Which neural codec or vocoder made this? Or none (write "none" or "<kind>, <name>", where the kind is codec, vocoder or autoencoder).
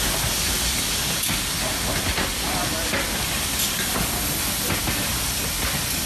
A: none